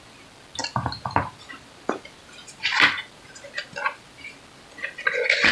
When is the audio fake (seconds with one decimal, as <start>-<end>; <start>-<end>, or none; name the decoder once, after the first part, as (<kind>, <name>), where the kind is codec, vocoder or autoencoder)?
none